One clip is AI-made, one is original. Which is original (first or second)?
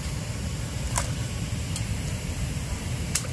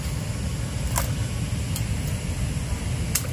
second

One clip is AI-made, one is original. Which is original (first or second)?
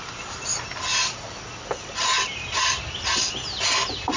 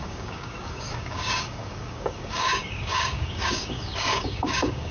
first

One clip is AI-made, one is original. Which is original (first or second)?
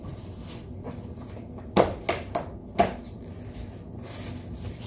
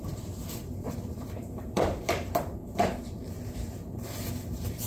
first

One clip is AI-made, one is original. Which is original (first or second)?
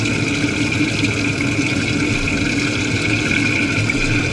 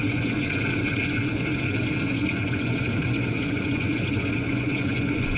first